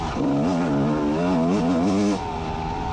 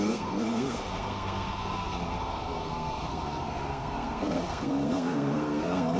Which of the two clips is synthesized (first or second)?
second